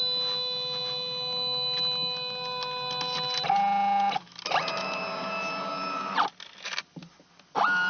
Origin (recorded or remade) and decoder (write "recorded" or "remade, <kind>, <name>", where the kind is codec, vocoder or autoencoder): recorded